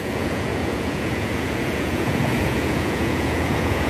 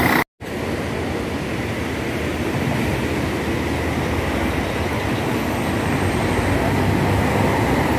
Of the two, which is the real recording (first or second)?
second